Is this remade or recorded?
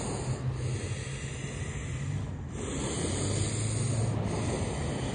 recorded